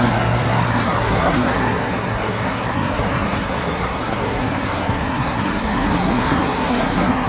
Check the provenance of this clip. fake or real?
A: fake